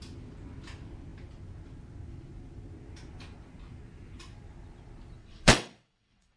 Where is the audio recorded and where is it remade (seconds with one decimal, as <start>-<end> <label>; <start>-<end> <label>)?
0.0-5.2 recorded; 5.2-6.4 remade